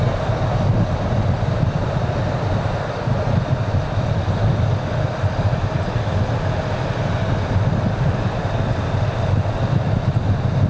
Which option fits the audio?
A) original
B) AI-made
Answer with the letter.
A